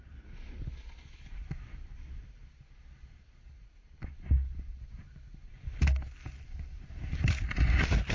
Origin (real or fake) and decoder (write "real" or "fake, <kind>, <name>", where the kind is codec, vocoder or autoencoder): real